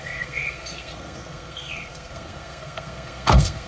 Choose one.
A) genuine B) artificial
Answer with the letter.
B